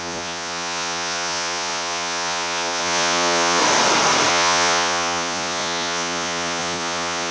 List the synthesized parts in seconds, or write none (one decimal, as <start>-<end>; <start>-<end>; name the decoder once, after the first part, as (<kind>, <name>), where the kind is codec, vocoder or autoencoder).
0.0-3.6 (vocoder, Vocos); 4.3-7.3